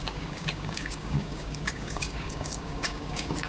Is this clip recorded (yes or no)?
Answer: no